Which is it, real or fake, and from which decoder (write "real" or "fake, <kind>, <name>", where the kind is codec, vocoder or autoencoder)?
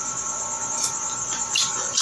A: fake, vocoder, BigVGAN v2